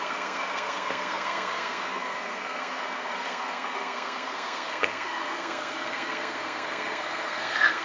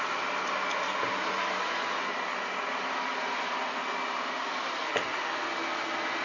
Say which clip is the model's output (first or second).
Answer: first